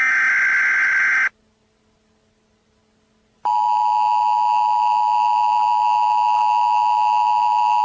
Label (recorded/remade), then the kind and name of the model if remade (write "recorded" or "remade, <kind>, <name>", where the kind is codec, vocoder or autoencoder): recorded